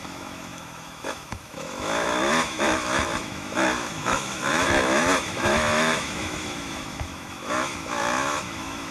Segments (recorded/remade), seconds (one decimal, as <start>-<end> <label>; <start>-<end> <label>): 0.0-8.9 remade